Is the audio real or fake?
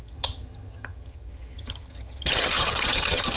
fake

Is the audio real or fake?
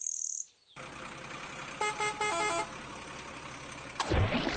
real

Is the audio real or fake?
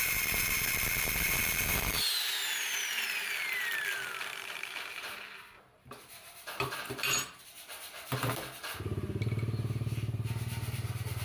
fake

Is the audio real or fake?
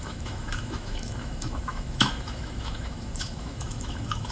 fake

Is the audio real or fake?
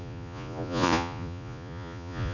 fake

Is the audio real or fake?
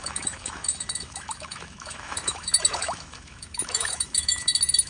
fake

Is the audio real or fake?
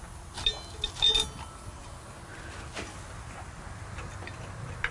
real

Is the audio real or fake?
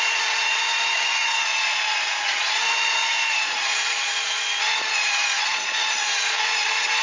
fake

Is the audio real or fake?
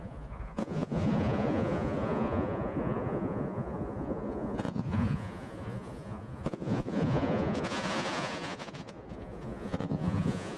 fake